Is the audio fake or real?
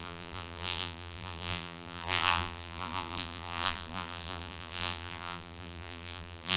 fake